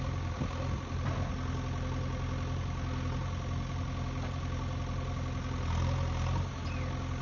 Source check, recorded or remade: recorded